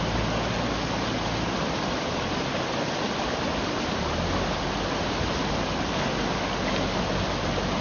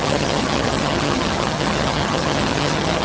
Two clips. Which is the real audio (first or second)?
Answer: first